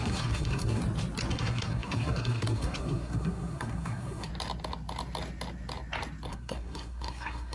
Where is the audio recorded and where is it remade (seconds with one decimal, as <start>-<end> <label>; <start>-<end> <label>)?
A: 0.0-0.8 remade; 0.8-1.3 recorded; 1.3-4.3 remade; 4.3-6.3 recorded; 6.3-7.5 remade